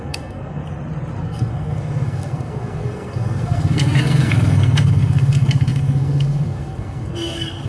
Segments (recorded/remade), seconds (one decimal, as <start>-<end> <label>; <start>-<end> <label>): 0.0-0.6 remade; 0.6-1.2 recorded; 1.2-7.7 remade